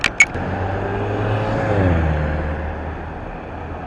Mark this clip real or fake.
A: real